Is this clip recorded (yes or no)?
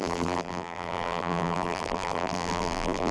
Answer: no